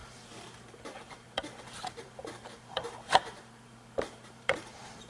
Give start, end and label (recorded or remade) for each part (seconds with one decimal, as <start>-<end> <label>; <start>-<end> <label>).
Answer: 0.0-5.1 remade